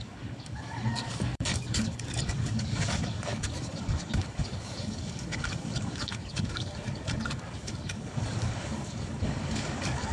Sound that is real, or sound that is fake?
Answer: fake